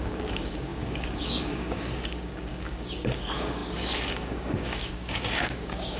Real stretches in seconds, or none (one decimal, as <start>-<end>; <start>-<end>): none